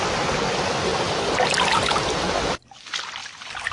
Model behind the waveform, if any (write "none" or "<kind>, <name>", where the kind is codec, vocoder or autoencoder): none